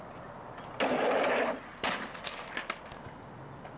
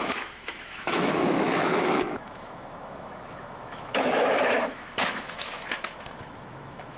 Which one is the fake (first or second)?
second